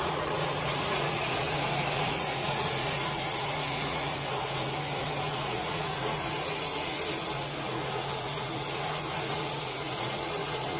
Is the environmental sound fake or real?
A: fake